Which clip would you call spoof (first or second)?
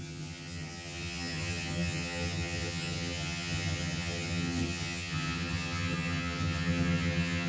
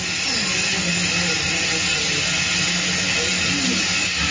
first